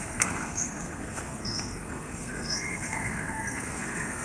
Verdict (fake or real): fake